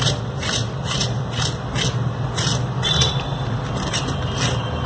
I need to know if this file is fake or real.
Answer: real